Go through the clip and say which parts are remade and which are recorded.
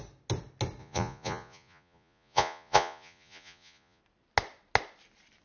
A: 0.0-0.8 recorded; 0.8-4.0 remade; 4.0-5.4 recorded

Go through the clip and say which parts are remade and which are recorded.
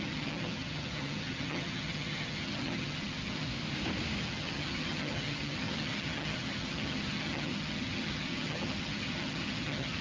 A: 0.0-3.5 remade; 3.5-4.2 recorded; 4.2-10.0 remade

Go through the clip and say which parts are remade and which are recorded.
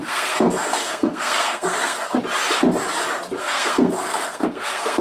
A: 0.0-2.2 remade; 2.2-3.4 recorded; 3.4-5.0 remade